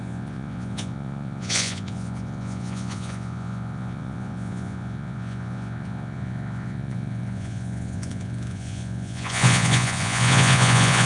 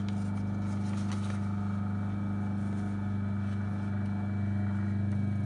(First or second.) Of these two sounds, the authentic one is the second